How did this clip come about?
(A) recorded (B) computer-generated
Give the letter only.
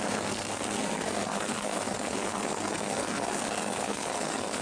B